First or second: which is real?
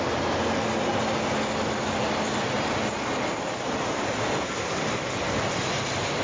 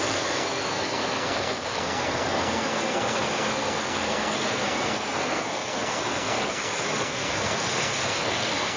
first